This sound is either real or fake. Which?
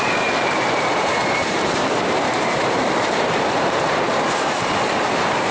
fake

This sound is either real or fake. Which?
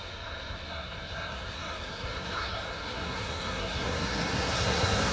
fake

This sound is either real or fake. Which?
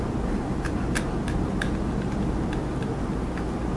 real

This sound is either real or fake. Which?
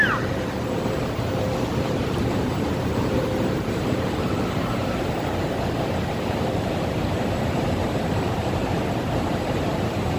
fake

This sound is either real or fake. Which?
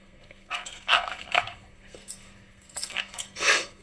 fake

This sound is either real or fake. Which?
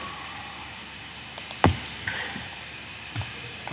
fake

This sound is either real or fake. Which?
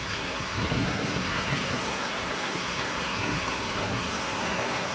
fake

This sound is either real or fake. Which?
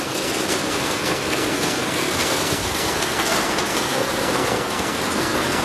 fake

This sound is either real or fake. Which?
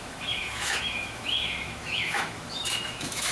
fake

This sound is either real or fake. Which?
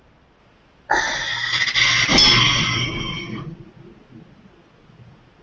real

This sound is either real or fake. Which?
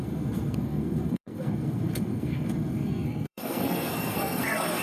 fake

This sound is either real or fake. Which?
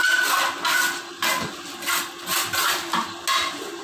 real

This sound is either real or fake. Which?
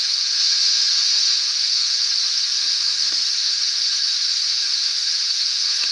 fake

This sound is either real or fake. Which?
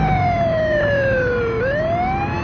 real